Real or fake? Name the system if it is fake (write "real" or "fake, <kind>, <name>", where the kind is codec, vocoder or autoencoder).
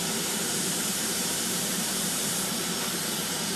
fake, vocoder, BigVGAN v2